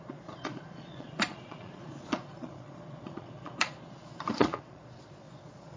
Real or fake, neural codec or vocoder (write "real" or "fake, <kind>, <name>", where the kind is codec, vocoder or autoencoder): fake, vocoder, Vocos